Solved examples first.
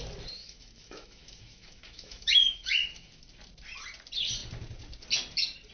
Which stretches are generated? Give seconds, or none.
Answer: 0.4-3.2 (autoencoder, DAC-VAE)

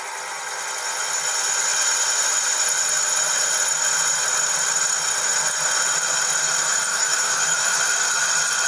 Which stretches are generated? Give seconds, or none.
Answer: 6.9-7.8 (autoencoder, DAC-VAE)

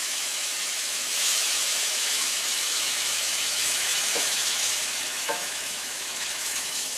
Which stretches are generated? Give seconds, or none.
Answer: 0.0-7.0 (autoencoder, DAC-VAE)